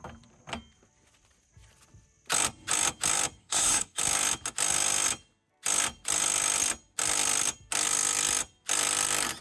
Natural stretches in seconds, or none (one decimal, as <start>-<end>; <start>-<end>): 0.0-3.4; 4.0-9.4